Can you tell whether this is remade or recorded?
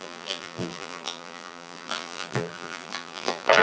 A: remade